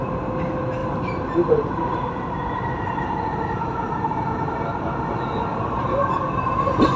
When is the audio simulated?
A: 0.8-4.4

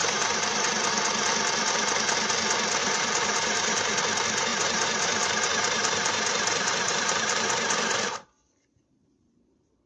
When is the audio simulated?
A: 0.0-0.7; 2.8-4.0; 4.5-9.9

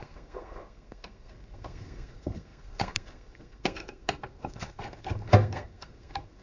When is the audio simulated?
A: 0.0-6.4

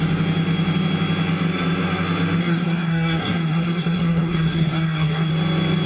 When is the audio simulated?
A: 2.4-5.3

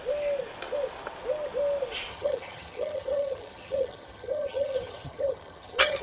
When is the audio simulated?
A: 2.1-6.0

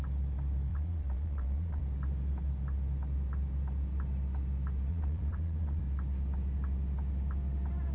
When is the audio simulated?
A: 0.7-1.8; 4.9-5.8